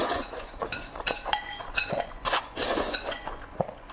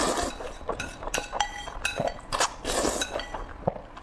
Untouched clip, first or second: second